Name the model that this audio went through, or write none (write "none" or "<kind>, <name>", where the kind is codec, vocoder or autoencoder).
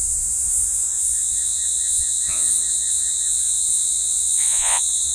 vocoder, Vocos